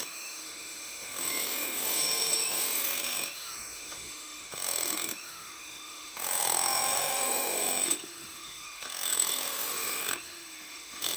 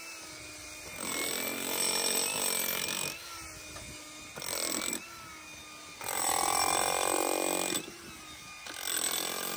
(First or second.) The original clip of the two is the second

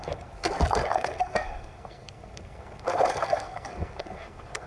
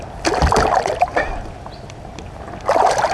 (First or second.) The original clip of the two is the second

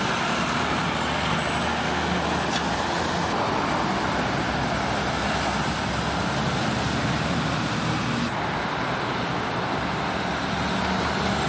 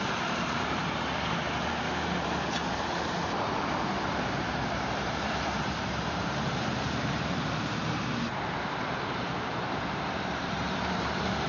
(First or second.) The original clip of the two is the first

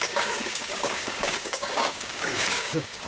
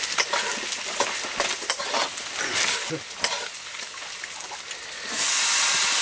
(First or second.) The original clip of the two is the second